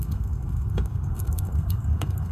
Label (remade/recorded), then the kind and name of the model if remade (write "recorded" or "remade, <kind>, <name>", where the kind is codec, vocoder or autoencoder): remade, codec, SNAC